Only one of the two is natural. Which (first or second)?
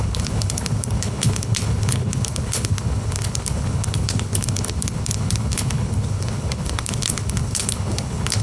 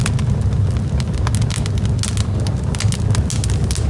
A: second